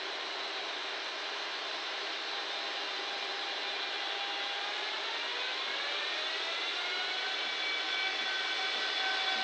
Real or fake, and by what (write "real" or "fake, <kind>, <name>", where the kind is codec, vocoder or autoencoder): real